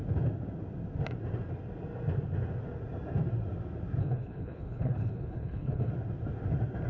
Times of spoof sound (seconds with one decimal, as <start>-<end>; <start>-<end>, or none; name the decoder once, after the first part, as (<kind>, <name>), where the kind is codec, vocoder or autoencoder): 4.0-5.9 (codec, HILCodec)